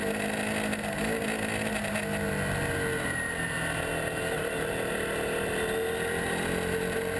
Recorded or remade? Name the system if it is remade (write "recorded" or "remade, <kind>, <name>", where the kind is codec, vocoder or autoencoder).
recorded